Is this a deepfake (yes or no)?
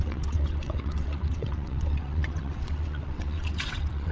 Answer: yes